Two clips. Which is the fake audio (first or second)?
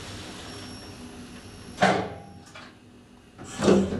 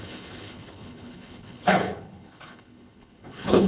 second